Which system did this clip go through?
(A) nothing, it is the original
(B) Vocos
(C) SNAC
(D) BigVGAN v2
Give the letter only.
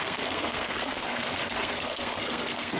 C